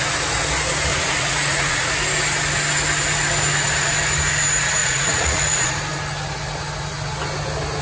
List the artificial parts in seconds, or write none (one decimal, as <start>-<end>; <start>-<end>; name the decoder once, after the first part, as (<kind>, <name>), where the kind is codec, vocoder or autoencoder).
0.9-1.9 (vocoder, Vocos); 4.8-5.7